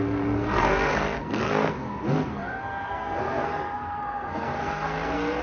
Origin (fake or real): fake